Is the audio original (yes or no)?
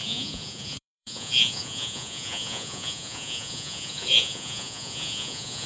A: no